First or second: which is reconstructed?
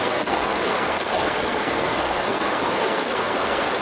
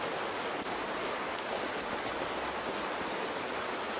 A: first